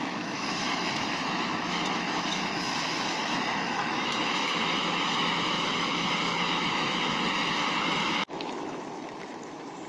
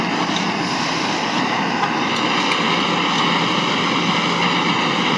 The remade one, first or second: first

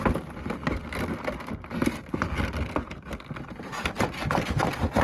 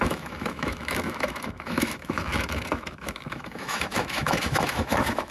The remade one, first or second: second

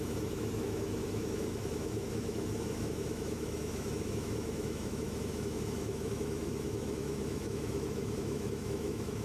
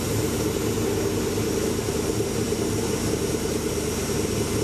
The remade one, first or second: first